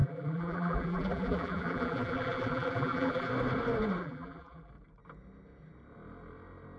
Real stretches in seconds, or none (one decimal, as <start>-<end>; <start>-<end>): 3.3-4.0; 4.7-6.8